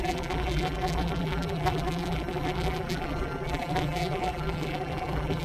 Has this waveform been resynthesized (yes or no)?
yes